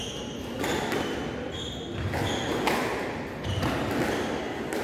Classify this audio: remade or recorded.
recorded